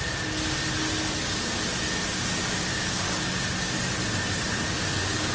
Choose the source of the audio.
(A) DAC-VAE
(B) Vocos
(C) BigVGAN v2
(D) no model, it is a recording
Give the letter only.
D